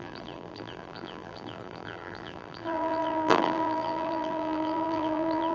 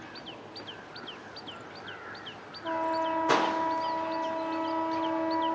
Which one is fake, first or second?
first